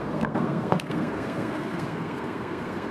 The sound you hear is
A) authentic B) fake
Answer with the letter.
B